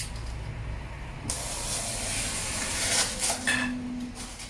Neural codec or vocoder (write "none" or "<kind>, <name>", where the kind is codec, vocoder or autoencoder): none